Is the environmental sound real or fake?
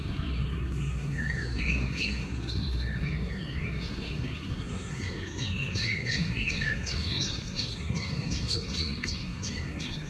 fake